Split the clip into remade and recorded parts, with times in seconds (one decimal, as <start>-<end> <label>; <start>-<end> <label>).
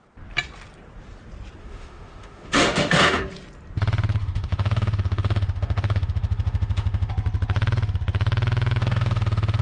0.0-1.6 recorded; 1.6-3.2 remade; 3.2-4.2 recorded; 4.2-7.1 remade; 7.1-8.8 recorded; 8.8-9.6 remade